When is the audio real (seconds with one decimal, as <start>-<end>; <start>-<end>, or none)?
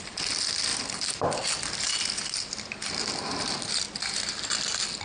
0.0-5.0